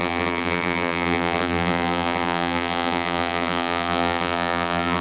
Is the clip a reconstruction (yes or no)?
yes